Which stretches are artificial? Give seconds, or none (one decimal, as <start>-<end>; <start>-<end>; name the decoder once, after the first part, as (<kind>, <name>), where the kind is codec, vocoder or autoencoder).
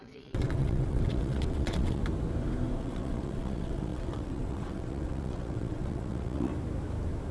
0.0-2.0 (vocoder, WaveNeXt); 2.8-6.5